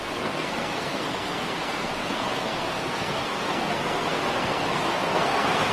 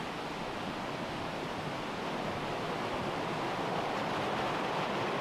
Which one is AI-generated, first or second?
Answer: first